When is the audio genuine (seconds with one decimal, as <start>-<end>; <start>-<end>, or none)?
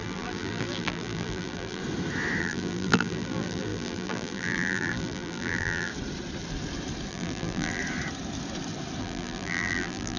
1.8-2.4; 5.9-7.1; 7.8-9.0